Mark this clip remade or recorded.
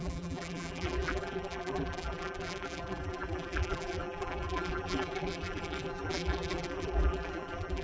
remade